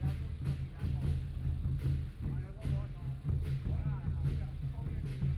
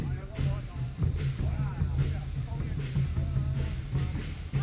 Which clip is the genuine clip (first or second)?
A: first